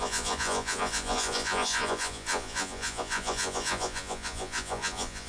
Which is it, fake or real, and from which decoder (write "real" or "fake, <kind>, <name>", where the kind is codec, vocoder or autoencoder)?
fake, vocoder, Vocos